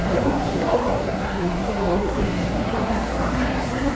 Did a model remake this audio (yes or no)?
yes